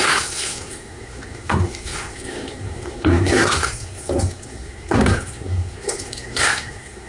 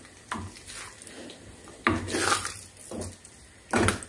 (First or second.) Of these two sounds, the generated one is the first